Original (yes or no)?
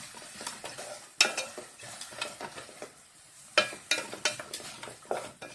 yes